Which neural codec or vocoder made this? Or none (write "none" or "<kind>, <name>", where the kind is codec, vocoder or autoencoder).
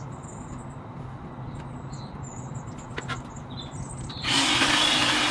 none